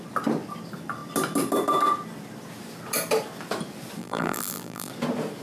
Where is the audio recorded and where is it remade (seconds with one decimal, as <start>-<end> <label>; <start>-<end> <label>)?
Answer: 0.0-4.0 recorded; 4.0-4.9 remade; 4.9-5.4 recorded